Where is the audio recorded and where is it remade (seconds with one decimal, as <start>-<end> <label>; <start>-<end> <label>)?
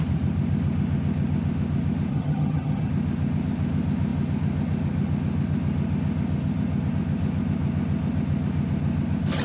0.0-2.1 recorded; 2.1-2.9 remade; 2.9-9.4 recorded